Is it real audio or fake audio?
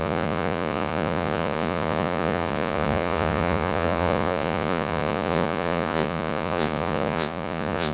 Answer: fake